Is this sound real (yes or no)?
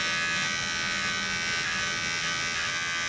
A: yes